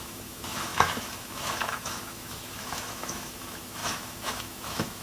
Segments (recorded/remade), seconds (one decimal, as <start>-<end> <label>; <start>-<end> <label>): 0.0-5.0 remade